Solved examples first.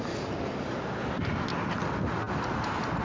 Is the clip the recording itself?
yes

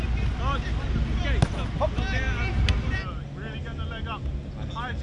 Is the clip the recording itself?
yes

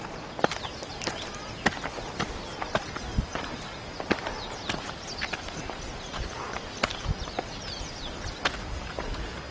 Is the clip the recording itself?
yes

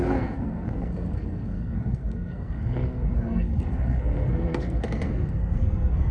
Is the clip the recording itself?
no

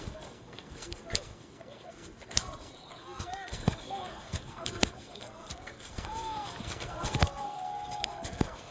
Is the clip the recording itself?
no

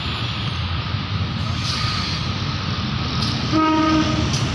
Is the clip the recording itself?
yes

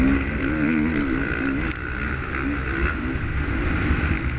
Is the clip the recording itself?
yes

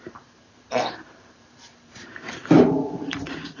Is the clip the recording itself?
no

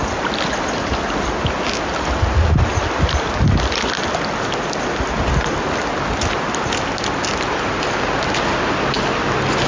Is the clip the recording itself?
yes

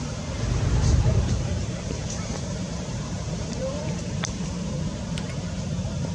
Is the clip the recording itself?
no